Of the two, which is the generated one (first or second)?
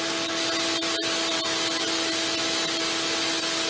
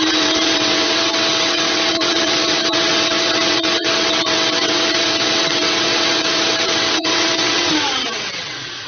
second